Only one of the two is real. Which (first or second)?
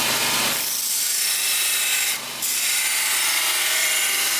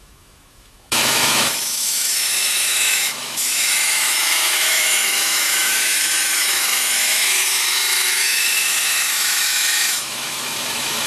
first